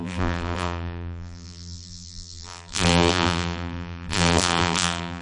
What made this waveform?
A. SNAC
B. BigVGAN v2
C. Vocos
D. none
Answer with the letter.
B